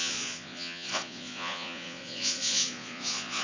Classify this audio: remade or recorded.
remade